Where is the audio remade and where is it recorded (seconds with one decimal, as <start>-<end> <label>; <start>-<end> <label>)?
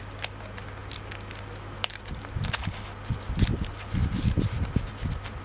0.0-5.4 recorded